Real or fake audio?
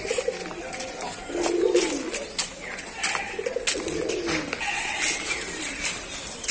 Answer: real